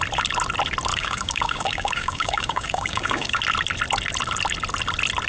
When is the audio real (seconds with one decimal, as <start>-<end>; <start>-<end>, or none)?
0.0-0.9; 3.4-5.3